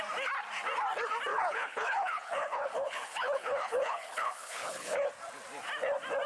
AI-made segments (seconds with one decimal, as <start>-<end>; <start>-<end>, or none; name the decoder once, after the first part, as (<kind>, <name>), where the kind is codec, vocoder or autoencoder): 1.3-5.1 (codec, HILCodec)